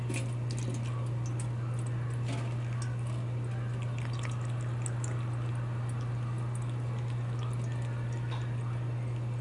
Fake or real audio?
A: real